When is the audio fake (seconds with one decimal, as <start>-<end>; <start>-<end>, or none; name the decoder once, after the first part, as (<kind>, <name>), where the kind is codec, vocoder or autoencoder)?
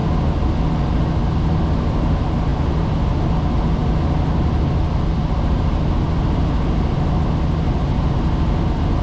none